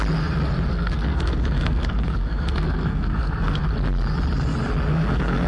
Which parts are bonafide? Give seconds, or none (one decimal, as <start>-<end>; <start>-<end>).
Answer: 0.0-0.7; 3.6-4.9